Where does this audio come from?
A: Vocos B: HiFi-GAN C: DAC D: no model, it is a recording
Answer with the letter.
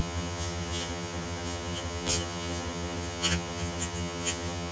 B